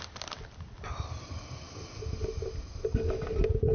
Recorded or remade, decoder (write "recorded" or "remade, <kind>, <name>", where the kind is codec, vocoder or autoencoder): recorded